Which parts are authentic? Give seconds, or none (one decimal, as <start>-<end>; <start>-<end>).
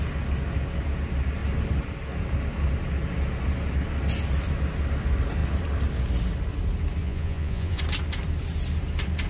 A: 0.0-7.0; 7.8-9.3